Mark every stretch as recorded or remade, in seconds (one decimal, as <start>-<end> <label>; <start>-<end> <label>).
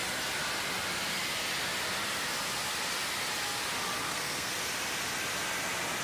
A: 0.0-4.0 recorded; 4.0-4.5 remade; 4.5-6.0 recorded